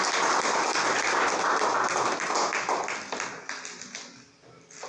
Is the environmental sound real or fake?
real